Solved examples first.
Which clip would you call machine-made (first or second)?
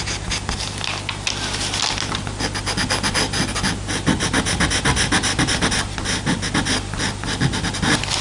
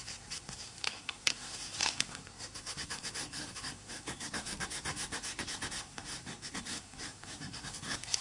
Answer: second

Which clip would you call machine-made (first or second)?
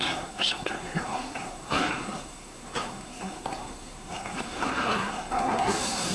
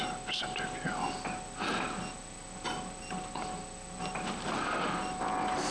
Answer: first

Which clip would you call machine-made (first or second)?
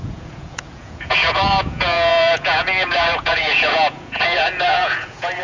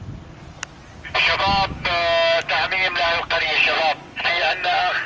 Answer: first